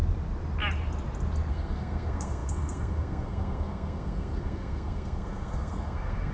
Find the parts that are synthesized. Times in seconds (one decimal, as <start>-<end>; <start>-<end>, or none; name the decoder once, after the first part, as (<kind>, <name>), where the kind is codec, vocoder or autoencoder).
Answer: 1.5-6.3 (codec, SNAC)